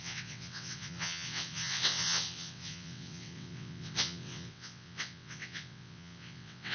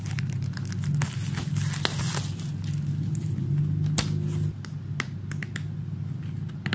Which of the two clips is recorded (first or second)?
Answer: second